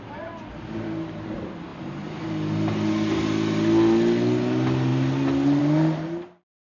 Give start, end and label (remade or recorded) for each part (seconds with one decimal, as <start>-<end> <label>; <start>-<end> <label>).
0.0-6.6 recorded